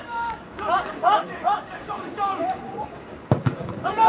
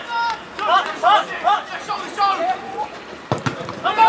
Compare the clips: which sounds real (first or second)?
second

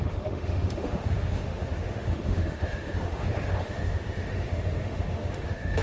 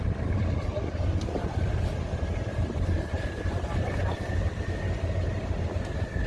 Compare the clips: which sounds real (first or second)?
second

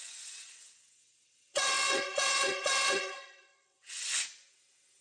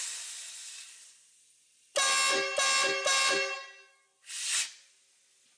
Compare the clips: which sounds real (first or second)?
second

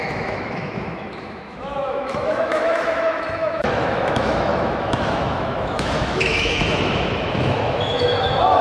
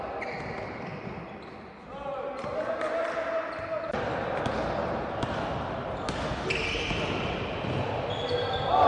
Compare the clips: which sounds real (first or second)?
second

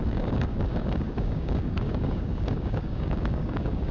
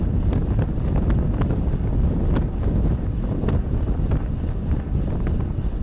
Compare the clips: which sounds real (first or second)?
second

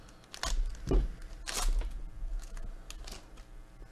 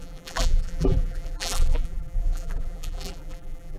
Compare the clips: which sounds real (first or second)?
first